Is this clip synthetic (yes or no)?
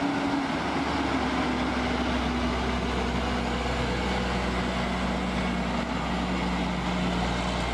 no